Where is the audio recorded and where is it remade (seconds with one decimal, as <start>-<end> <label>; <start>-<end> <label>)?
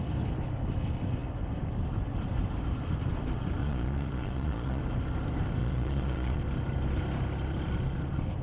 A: 0.0-3.6 recorded; 3.6-4.8 remade; 4.8-5.6 recorded; 5.6-6.4 remade; 6.4-8.4 recorded